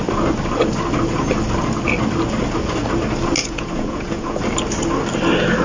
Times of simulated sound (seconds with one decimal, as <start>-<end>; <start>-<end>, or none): 3.4-4.4